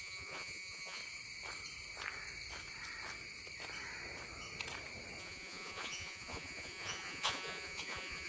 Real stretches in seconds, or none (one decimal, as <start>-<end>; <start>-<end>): 1.0-5.2

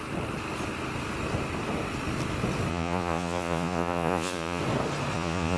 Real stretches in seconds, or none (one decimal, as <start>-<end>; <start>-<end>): 0.0-2.7; 4.6-5.1

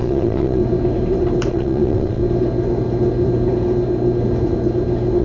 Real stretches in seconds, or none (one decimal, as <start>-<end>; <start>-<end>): 0.6-1.5; 2.2-5.2

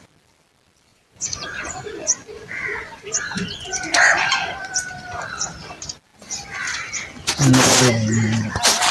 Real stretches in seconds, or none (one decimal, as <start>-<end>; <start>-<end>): 0.0-0.9; 4.5-8.9

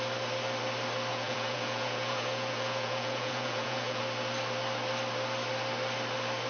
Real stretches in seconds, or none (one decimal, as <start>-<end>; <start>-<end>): 0.0-1.1; 4.0-6.5

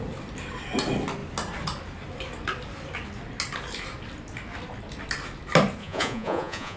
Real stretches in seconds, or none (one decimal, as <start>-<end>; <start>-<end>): 0.0-5.8